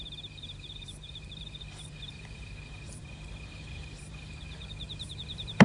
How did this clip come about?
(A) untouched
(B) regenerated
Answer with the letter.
B